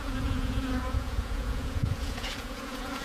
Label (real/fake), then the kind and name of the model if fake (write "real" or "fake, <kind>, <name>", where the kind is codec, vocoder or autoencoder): fake, vocoder, Vocos